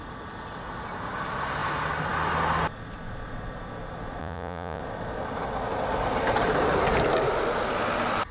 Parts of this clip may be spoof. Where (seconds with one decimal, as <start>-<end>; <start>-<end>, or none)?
4.2-4.8